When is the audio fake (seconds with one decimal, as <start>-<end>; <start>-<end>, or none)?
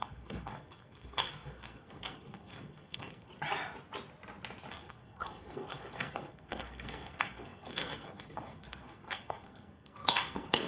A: 0.0-3.3; 4.7-10.7